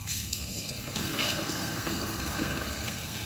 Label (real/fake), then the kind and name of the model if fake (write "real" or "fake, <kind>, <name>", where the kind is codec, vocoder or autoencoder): fake, codec, SNAC